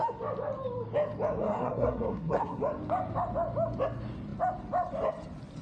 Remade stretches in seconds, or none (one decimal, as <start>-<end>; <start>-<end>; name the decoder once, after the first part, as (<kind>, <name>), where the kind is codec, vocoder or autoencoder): 1.4-2.6 (codec, SNAC)